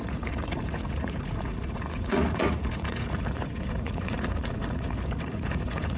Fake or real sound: fake